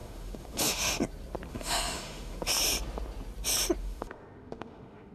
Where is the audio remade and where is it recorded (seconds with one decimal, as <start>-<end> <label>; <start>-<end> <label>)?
0.0-1.0 remade; 1.0-1.5 recorded; 1.5-2.5 remade; 2.5-3.8 recorded; 3.8-5.1 remade